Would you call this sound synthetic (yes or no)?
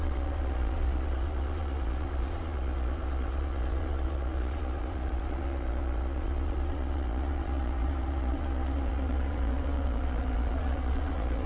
yes